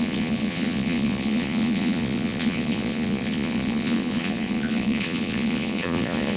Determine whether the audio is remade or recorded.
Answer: remade